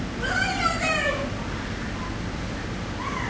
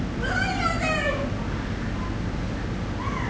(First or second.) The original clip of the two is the second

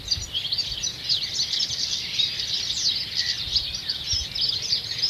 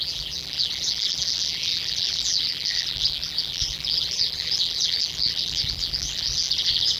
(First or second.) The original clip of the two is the first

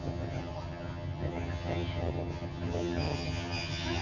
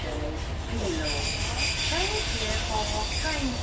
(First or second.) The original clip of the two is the second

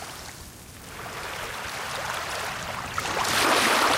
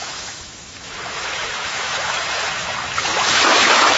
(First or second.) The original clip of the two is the first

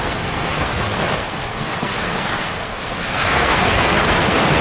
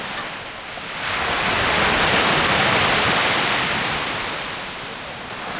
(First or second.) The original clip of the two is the second